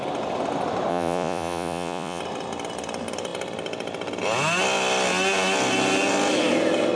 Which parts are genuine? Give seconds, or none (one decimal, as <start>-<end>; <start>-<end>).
0.0-0.9; 2.2-7.0